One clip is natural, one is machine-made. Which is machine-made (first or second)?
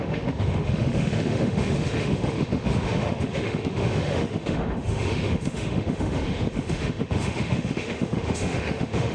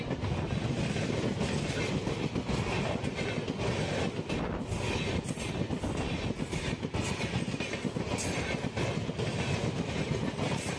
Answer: first